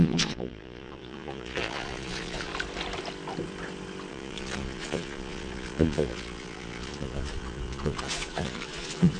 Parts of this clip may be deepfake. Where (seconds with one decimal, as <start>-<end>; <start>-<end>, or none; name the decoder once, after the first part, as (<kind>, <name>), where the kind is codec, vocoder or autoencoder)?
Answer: 0.0-2.5 (vocoder, Vocos); 4.1-9.2